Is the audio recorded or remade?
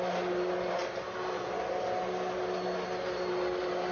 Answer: recorded